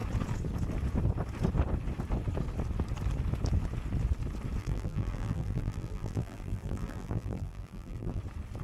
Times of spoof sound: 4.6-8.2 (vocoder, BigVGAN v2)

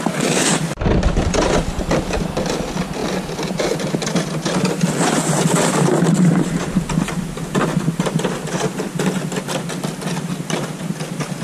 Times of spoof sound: none